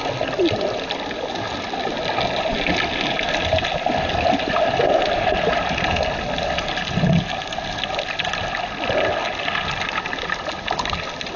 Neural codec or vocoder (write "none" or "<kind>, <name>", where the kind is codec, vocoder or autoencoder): none